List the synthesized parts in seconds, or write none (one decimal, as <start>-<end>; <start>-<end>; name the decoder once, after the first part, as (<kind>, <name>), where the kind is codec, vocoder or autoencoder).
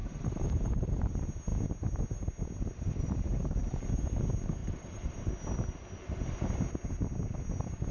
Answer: 0.0-1.1 (vocoder, BigVGAN v2); 4.6-5.3